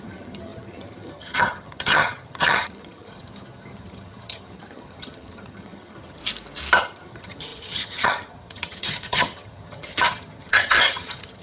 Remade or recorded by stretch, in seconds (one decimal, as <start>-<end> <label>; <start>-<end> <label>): 0.0-6.2 remade; 6.2-6.8 recorded; 6.8-11.4 remade